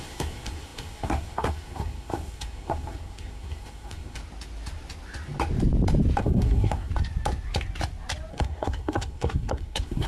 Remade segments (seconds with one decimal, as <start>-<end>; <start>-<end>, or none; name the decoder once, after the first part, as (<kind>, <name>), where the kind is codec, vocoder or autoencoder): 0.0-4.2 (codec, SNAC); 6.2-6.9; 8.3-10.1